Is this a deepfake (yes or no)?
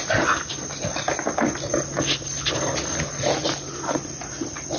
no